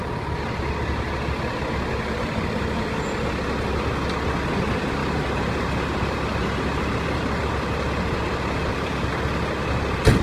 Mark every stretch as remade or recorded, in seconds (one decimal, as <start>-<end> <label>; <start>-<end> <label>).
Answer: 0.0-5.0 recorded; 5.0-7.5 remade; 7.5-8.7 recorded; 8.7-9.2 remade; 9.2-10.2 recorded